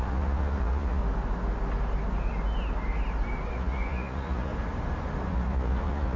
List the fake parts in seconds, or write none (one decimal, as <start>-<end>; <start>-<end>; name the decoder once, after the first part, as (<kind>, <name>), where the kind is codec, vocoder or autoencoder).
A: 0.0-1.0 (vocoder, Vocos); 3.5-4.5; 5.3-6.2